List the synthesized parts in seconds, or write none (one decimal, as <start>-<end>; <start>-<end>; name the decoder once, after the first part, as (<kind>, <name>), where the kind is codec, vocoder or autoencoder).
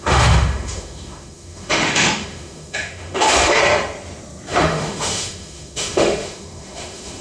0.0-3.6 (autoencoder, DAC-VAE); 4.5-7.2